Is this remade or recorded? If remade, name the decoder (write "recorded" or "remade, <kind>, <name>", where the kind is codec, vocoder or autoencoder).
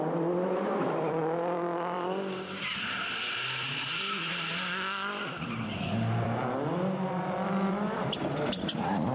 remade, vocoder, BigVGAN v2